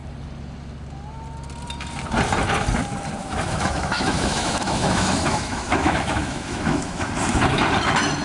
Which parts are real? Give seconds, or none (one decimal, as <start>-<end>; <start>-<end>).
0.0-3.2; 7.1-8.2

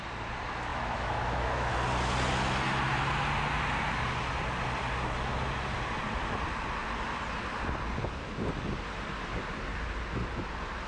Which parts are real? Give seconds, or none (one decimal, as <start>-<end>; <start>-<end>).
0.0-0.7; 1.7-10.9

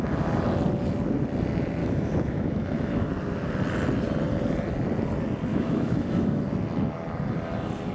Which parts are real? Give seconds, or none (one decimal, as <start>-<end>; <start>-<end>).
0.0-1.8; 3.1-5.5; 6.4-7.9